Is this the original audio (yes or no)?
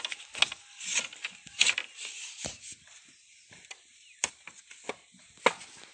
yes